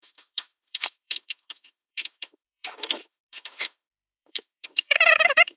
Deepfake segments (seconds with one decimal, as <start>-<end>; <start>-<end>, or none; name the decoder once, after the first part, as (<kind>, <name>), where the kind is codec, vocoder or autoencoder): 0.0-5.6 (autoencoder, DAC-VAE)